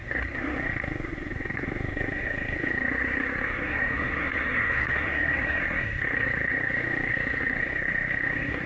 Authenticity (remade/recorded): remade